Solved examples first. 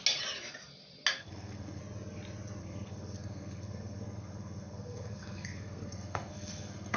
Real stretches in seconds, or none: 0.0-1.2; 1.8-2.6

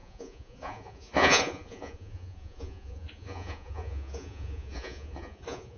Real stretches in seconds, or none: none

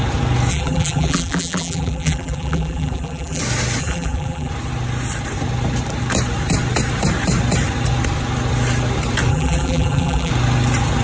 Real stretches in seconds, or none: 0.0-0.5; 3.4-3.8; 4.5-9.3; 10.3-11.0